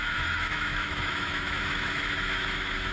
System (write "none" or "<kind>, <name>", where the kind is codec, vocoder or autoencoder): autoencoder, DAC-VAE